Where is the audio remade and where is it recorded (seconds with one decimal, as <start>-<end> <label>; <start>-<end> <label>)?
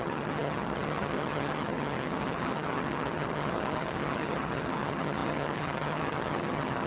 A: 0.0-6.9 remade